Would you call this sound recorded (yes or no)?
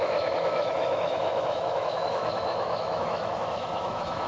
no